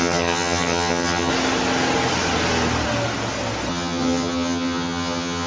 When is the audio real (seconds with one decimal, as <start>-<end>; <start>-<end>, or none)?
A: 1.3-3.7